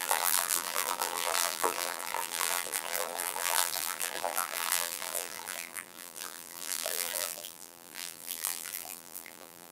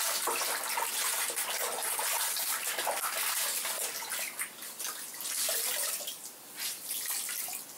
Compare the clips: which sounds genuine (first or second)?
second